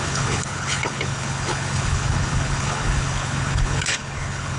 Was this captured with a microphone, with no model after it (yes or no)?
no